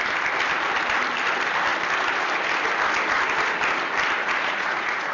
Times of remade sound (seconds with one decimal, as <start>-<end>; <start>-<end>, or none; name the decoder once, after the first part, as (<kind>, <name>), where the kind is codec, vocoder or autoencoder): 4.2-5.1 (vocoder, Vocos)